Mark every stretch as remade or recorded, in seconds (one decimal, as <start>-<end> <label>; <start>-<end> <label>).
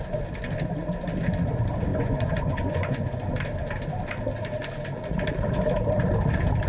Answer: 0.0-1.9 recorded; 1.9-3.3 remade; 3.3-6.7 recorded